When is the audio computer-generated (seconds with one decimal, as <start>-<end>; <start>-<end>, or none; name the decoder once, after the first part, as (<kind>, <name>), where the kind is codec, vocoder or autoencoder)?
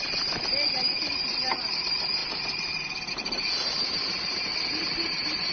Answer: none